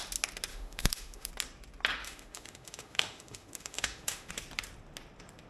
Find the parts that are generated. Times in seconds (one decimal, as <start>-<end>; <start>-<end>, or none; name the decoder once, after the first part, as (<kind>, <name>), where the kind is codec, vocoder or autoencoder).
0.5-1.3 (autoencoder, DAC-VAE); 2.0-4.3